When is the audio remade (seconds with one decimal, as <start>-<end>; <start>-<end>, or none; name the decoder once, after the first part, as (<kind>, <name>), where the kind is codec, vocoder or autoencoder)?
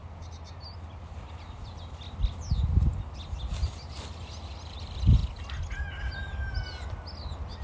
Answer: none